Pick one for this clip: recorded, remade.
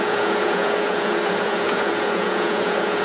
remade